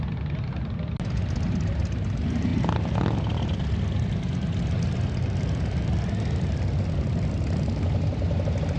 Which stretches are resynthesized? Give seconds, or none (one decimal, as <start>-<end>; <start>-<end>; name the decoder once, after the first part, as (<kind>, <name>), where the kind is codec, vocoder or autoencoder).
none